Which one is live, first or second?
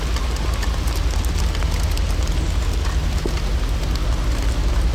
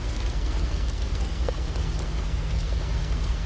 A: first